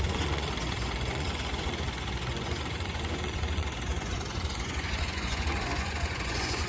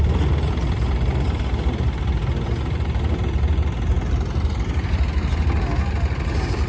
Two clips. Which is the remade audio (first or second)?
first